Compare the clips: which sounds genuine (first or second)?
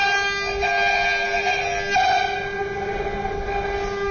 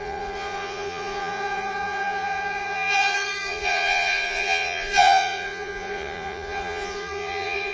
first